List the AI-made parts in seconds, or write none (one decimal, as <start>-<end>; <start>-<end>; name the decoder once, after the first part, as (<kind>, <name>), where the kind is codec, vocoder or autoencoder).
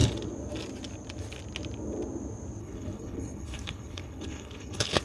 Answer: 2.6-5.0 (codec, HILCodec)